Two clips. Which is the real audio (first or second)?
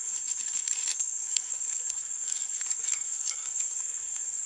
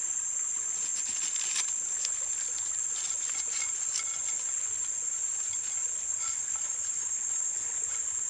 second